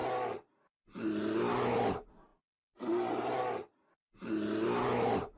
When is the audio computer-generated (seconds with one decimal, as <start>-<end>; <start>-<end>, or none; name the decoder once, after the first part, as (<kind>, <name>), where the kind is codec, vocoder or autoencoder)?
none